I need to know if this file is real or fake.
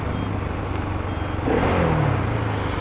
real